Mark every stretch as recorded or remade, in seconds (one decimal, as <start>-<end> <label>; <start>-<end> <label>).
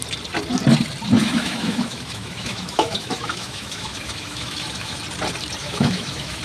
0.0-1.2 recorded; 1.2-5.0 remade; 5.0-5.6 recorded; 5.6-6.4 remade